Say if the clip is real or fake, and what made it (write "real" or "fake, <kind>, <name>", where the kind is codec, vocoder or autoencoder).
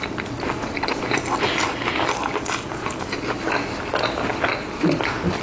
real